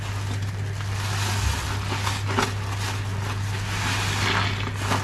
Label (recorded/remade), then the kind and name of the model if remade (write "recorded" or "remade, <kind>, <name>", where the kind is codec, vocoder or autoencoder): recorded